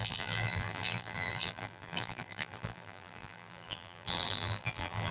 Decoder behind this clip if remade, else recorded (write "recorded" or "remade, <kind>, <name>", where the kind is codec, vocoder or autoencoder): remade, vocoder, BigVGAN v2